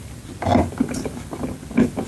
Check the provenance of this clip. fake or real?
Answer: real